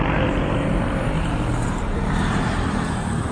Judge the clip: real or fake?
fake